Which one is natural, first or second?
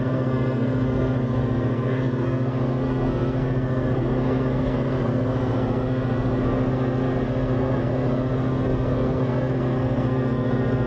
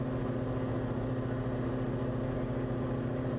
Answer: second